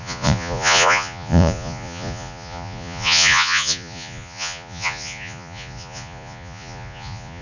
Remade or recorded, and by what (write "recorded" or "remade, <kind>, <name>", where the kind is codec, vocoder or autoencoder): remade, vocoder, Vocos